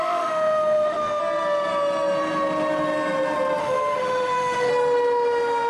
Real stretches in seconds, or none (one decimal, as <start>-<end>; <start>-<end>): 1.2-3.6; 4.7-5.7

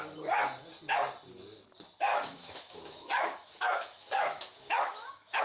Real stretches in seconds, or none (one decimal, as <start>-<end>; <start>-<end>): 0.0-2.1

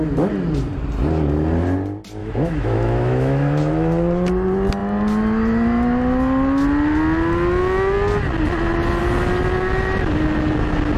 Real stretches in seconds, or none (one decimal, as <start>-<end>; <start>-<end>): 0.0-2.2; 3.7-11.0